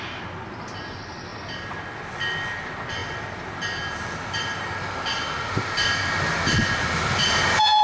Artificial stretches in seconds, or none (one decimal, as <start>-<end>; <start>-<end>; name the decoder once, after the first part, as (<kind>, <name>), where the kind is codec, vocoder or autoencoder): none